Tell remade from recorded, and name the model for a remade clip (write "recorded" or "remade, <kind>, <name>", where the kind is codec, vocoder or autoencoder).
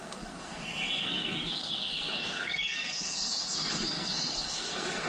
remade, codec, SNAC